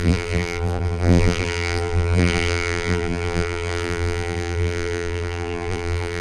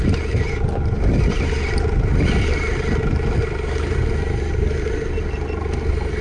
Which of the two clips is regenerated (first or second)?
first